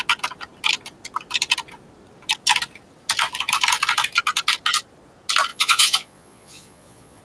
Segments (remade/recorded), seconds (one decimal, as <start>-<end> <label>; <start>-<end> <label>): 0.0-5.5 recorded; 5.5-7.2 remade